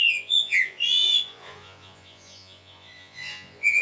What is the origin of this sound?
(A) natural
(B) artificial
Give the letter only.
B